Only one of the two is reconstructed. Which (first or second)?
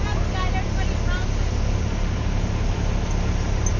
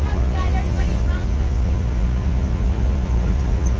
second